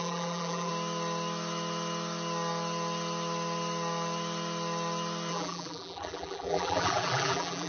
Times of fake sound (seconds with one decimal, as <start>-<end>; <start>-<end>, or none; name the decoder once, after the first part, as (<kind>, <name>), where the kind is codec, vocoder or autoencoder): 0.0-0.7 (vocoder, BigVGAN v2); 5.3-7.7